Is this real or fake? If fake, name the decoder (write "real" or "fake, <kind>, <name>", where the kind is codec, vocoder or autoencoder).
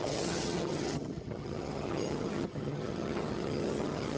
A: fake, vocoder, HiFi-GAN